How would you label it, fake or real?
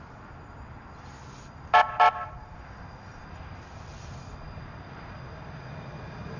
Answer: real